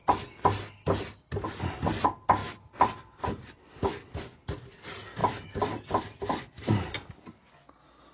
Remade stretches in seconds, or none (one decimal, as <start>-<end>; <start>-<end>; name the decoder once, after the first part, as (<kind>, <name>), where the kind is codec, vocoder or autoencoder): 2.4-4.0 (vocoder, BigVGAN v2); 5.2-7.5